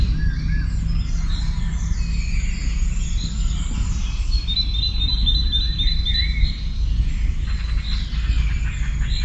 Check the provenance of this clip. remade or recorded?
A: recorded